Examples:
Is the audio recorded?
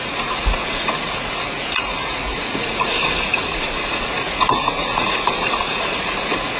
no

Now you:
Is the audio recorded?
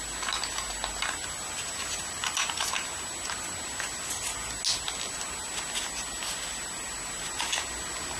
yes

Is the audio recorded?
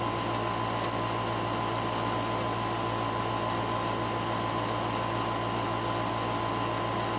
yes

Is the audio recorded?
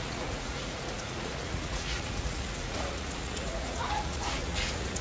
no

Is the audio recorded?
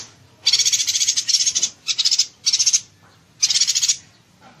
yes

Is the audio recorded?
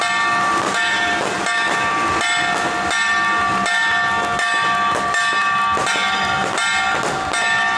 yes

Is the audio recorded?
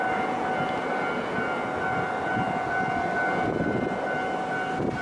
yes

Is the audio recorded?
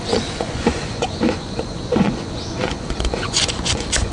no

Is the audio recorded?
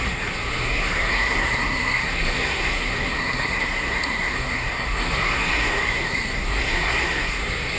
no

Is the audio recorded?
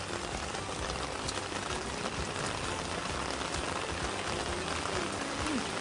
yes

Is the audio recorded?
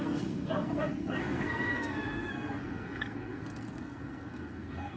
no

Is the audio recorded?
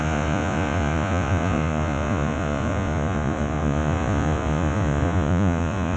no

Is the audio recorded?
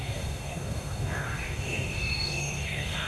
no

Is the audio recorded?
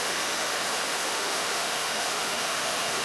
no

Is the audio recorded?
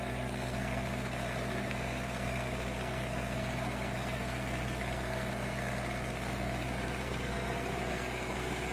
no